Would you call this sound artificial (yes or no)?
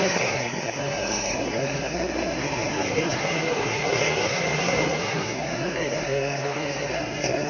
yes